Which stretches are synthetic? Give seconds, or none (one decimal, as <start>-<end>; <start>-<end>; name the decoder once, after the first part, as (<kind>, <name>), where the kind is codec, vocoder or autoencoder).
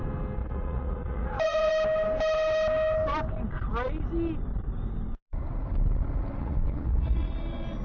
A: 0.4-1.7 (vocoder, Vocos); 6.4-7.3